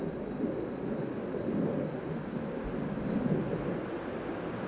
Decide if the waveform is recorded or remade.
recorded